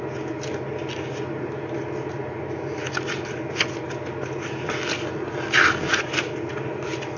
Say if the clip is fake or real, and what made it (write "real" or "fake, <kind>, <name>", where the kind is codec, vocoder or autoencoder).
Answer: real